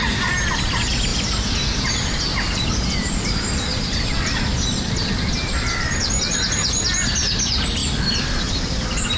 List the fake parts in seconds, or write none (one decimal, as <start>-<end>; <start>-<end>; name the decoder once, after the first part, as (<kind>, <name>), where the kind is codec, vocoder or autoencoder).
2.3-6.1 (vocoder, BigVGAN v2); 7.8-9.2